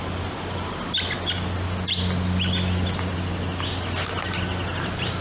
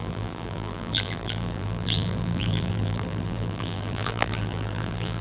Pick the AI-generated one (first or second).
second